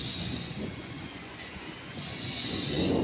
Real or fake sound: fake